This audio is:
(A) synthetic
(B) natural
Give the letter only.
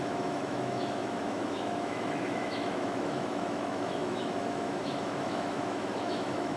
A